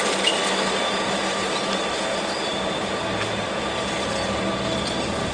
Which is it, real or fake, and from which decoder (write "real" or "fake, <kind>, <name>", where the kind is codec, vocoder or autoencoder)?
real